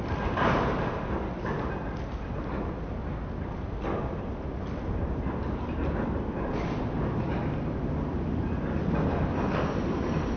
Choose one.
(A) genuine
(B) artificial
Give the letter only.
A